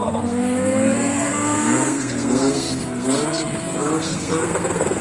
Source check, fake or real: fake